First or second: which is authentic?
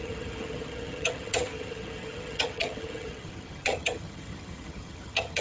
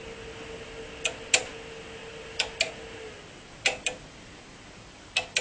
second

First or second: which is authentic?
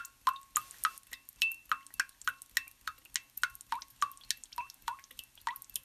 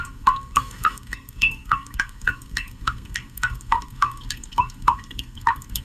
first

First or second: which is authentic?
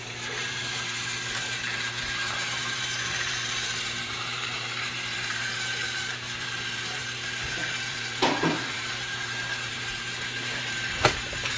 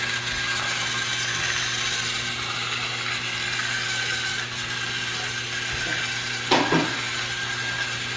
second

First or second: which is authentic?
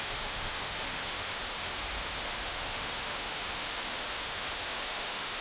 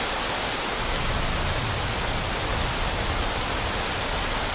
second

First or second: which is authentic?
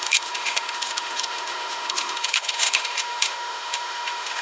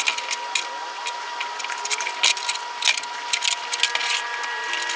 second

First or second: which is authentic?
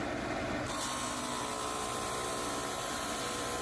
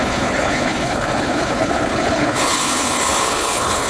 first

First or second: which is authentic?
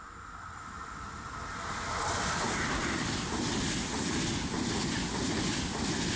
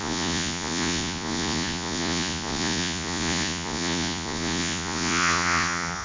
first